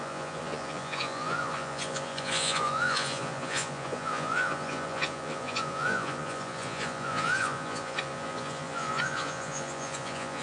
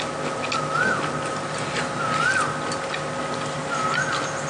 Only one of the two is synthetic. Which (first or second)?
first